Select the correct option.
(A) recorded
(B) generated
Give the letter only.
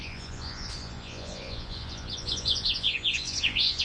B